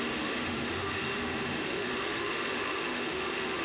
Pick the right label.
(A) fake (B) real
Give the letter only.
A